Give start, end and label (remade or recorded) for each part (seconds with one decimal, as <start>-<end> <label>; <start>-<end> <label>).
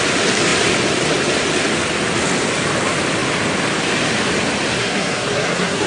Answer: 0.0-4.8 recorded; 4.8-5.9 remade